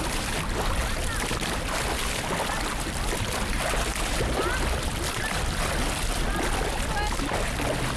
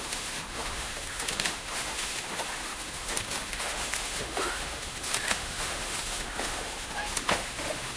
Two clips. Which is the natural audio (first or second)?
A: first